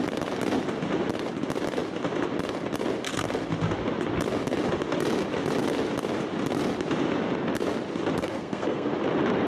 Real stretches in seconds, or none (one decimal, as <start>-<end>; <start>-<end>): 0.0-8.2; 8.9-9.5